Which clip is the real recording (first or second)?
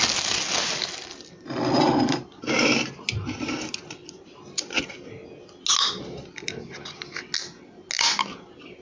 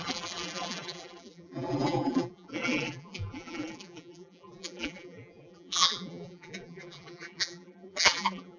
first